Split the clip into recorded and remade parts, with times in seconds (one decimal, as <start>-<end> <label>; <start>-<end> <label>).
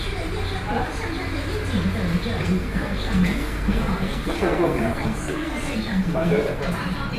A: 0.0-2.4 recorded; 2.4-6.6 remade; 6.6-7.2 recorded